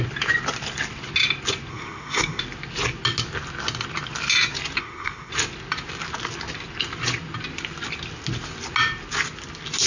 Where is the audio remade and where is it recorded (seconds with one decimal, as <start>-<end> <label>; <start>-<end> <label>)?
0.0-1.7 recorded; 1.7-2.4 remade; 2.4-4.8 recorded; 4.8-5.3 remade; 5.3-9.9 recorded